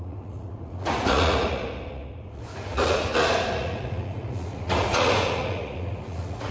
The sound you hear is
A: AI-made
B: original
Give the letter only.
A